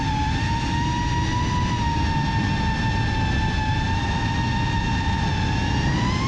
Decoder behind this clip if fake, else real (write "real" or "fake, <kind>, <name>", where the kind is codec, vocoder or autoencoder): real